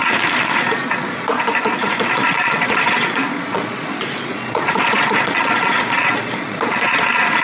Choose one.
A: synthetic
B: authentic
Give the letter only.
A